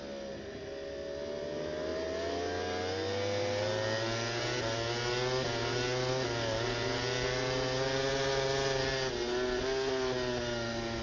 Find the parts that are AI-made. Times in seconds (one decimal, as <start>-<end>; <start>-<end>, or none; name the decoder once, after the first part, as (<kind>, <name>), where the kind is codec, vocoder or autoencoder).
none